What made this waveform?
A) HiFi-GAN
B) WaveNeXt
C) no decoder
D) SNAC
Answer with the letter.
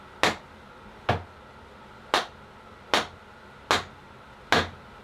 C